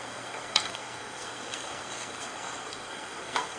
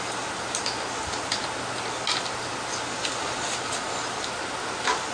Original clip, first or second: second